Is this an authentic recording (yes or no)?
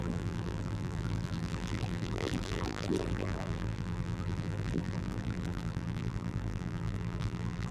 no